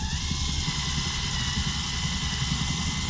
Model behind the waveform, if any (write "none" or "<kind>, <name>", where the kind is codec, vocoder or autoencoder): none